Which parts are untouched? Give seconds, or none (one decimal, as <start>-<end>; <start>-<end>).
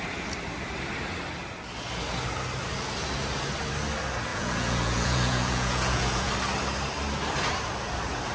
0.0-4.3; 6.3-8.3